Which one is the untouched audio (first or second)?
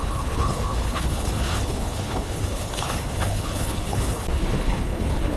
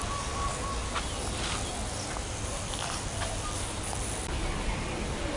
second